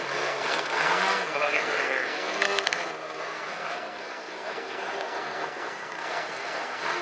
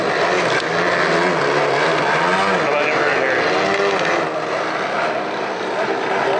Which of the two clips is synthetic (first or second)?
first